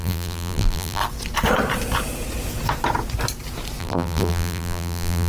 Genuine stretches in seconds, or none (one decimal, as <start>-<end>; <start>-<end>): 1.0-3.8